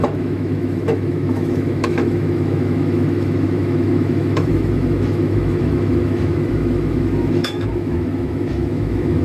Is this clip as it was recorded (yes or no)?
no